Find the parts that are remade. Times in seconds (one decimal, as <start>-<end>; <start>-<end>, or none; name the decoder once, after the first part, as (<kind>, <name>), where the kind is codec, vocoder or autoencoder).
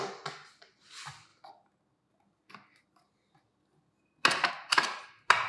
none